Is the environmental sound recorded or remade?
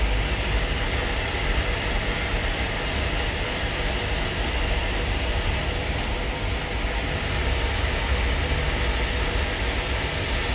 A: recorded